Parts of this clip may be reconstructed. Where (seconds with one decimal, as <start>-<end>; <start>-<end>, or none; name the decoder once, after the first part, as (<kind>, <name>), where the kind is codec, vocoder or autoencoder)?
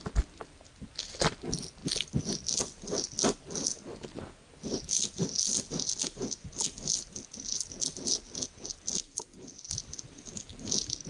9.0-9.7 (vocoder, BigVGAN v2)